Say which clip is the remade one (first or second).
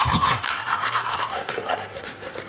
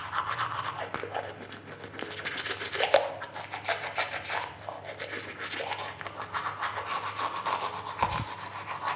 first